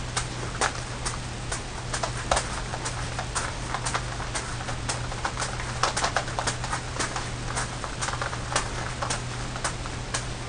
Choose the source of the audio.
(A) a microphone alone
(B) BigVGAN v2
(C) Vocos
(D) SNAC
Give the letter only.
A